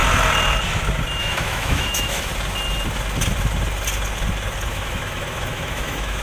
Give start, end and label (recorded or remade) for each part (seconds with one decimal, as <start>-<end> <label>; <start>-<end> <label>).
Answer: 0.0-1.2 recorded; 1.2-2.3 remade; 2.3-4.7 recorded; 4.7-6.2 remade

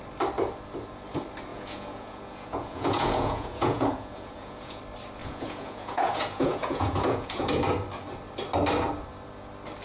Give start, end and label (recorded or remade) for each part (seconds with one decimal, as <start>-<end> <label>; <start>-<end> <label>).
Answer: 0.0-1.5 recorded; 1.5-4.8 remade; 4.8-5.2 recorded; 5.2-7.5 remade; 7.5-9.8 recorded

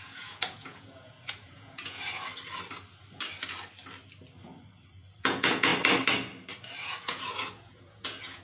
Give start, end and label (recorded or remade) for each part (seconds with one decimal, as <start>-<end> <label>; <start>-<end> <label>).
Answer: 0.0-2.3 remade; 2.3-5.2 recorded; 5.2-5.7 remade; 5.7-6.8 recorded; 6.8-8.4 remade

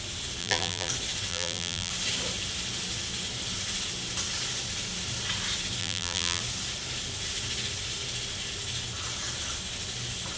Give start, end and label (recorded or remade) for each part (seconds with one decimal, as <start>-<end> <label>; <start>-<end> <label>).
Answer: 0.0-0.4 recorded; 0.4-0.9 remade; 0.9-1.3 recorded; 1.3-1.9 remade; 1.9-5.8 recorded; 5.8-6.4 remade; 6.4-10.4 recorded

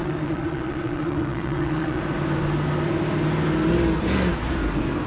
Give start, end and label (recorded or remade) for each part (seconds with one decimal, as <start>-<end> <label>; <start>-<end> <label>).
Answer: 0.0-2.0 remade; 2.0-5.1 recorded

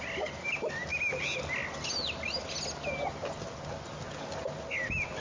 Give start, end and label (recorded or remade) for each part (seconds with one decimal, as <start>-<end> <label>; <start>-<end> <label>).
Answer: 0.0-5.2 recorded

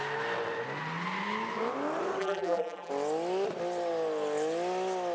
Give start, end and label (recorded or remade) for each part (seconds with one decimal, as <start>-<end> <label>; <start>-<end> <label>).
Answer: 0.0-2.2 recorded; 2.2-2.9 remade; 2.9-5.1 recorded

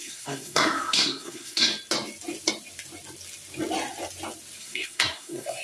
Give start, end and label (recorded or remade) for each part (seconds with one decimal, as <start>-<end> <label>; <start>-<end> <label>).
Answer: 0.0-1.7 remade; 1.7-4.6 recorded; 4.6-5.6 remade